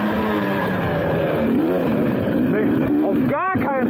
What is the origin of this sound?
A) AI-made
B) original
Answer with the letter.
A